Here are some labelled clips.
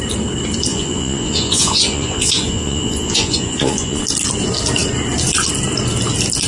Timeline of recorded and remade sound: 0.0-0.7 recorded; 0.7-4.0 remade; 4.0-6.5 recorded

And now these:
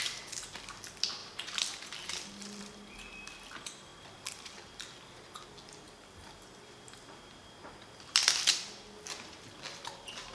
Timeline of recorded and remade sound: 0.0-10.3 recorded

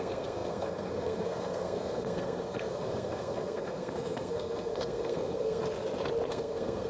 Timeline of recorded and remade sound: 0.0-5.6 remade; 5.6-6.3 recorded; 6.3-6.9 remade

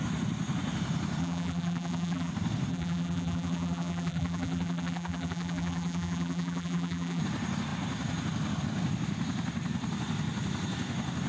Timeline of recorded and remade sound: 0.0-1.2 recorded; 1.2-2.3 remade; 2.3-2.7 recorded; 2.7-7.2 remade; 7.2-11.3 recorded

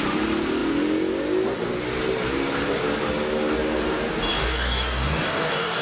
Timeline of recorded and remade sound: 0.0-4.3 recorded; 4.3-5.8 remade

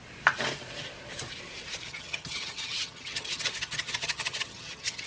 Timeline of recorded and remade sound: 0.0-1.9 recorded; 1.9-5.1 remade

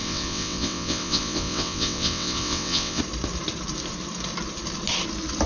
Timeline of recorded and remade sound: 0.0-3.0 remade; 3.0-5.5 recorded